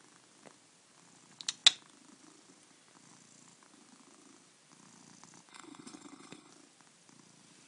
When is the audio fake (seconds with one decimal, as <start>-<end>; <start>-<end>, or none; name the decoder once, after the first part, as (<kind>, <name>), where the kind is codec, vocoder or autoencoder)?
5.5-6.5 (codec, HILCodec)